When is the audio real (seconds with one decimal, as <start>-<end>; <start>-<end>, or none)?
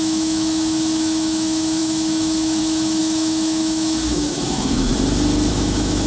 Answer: 4.9-5.5